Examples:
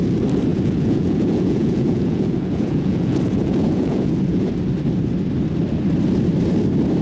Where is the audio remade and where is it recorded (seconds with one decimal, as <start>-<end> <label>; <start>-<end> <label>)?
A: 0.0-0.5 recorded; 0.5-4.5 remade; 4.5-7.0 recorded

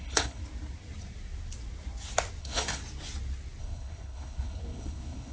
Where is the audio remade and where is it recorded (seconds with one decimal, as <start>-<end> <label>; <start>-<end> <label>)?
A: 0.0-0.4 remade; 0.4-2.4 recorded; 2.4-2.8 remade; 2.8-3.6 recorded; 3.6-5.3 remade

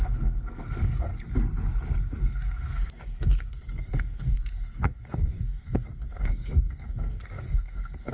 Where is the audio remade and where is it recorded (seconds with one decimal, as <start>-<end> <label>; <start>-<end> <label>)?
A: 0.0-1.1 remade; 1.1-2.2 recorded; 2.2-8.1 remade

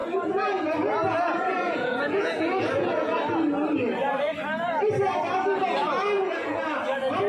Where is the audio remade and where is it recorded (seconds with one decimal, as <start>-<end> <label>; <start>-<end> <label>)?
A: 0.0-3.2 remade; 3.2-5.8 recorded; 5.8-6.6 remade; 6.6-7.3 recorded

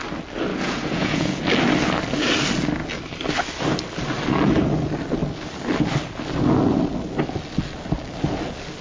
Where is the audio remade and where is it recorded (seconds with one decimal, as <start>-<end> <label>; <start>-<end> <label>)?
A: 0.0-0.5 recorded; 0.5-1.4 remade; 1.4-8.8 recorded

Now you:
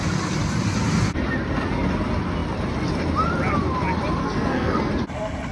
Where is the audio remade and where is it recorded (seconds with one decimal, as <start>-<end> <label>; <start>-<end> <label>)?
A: 0.0-4.2 recorded; 4.2-4.9 remade; 4.9-5.5 recorded